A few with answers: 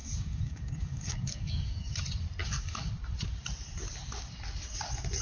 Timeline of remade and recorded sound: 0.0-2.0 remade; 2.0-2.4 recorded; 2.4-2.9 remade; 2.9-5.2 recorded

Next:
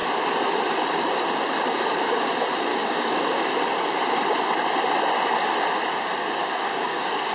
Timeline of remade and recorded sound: 0.0-2.7 recorded; 2.7-3.5 remade; 3.5-6.4 recorded; 6.4-7.3 remade